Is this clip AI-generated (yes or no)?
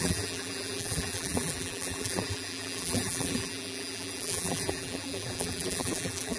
yes